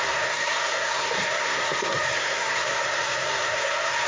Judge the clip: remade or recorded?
remade